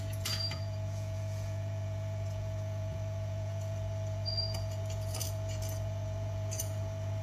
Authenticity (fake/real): fake